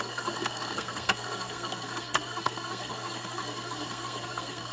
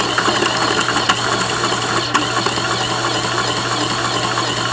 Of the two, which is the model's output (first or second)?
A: first